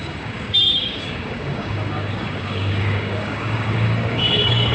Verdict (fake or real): fake